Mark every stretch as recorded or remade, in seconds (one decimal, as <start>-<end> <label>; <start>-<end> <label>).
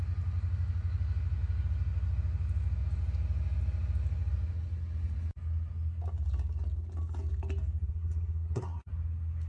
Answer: 0.0-7.8 recorded; 7.8-8.9 remade; 8.9-9.5 recorded